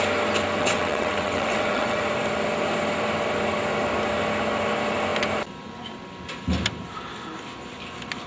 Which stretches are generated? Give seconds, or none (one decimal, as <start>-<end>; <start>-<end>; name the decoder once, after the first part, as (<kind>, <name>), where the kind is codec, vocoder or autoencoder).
0.6-2.0 (vocoder, WaveNeXt)